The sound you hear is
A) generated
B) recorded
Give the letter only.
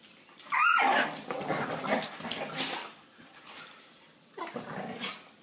B